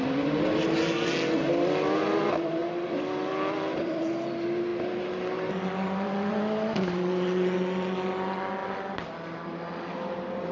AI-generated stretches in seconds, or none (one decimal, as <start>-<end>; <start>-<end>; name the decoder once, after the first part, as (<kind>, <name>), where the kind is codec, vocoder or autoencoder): none